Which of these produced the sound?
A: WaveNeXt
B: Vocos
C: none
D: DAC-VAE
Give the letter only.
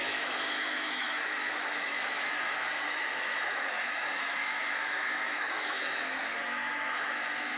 D